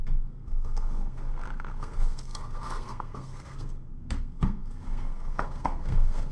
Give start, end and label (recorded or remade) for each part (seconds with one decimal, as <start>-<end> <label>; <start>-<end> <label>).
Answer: 0.0-6.3 remade